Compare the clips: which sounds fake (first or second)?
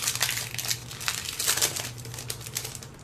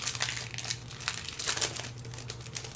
first